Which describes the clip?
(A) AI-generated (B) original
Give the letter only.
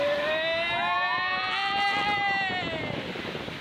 B